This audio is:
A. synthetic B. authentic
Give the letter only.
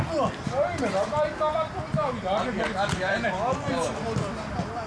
B